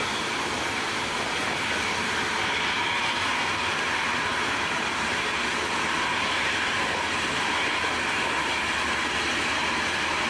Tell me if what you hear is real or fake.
real